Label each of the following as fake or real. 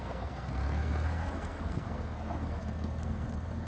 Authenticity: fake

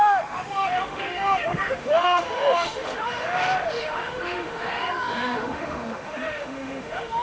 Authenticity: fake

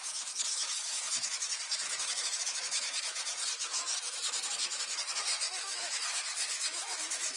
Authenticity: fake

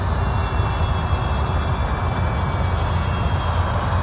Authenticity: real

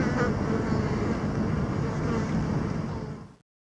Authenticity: real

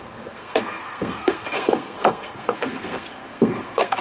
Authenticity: fake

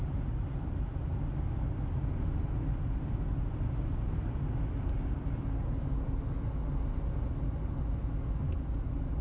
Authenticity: real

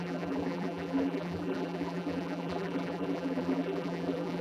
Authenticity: fake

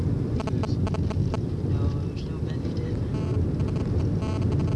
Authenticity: real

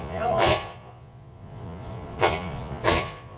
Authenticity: fake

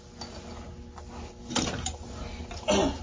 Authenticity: real